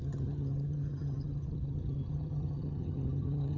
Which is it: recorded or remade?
remade